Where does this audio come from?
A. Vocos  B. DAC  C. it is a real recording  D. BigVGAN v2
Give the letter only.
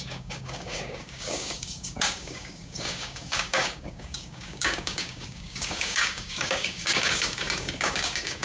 B